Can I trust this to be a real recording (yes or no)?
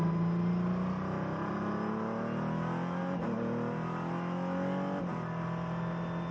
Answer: yes